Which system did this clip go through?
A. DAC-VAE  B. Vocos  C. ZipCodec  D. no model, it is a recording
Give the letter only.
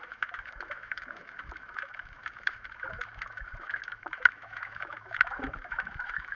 A